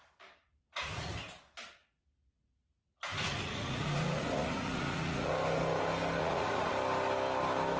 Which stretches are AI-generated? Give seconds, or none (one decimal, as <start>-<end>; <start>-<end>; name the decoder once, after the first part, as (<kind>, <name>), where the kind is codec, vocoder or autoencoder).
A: 0.5-1.1 (vocoder, Vocos); 3.1-5.3; 6.2-6.7

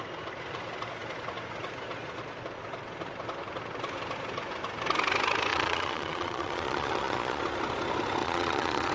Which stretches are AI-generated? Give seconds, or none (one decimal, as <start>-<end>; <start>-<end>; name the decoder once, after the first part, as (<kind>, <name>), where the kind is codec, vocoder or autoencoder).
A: 5.5-7.4 (vocoder, Vocos); 8.2-8.9